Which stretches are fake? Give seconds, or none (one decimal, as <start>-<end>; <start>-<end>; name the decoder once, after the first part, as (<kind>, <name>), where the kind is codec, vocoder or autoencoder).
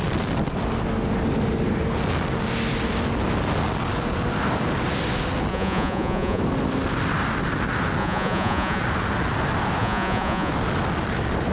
5.5-6.4 (vocoder, Vocos); 8.0-8.8; 9.8-10.5